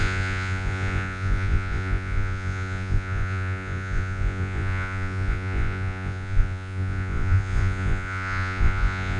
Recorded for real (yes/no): no